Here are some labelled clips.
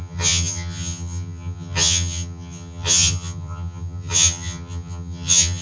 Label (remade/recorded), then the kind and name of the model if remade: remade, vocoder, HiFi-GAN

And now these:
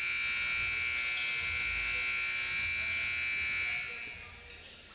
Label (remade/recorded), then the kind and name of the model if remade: recorded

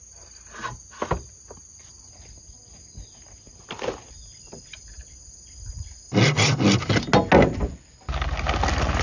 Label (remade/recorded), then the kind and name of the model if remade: recorded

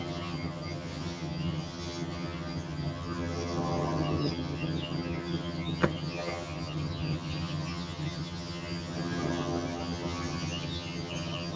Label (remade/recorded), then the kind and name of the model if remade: remade, vocoder, HiFi-GAN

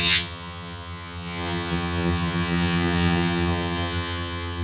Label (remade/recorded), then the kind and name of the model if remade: remade, vocoder, HiFi-GAN